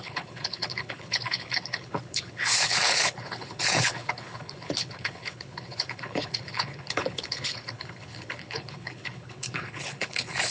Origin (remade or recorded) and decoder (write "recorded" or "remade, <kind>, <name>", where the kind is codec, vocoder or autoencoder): remade, codec, HILCodec